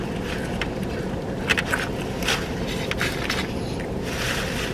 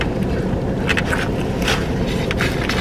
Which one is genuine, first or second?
second